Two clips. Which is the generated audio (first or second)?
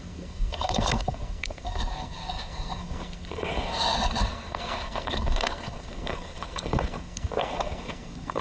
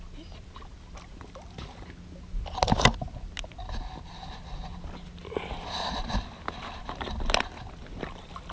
first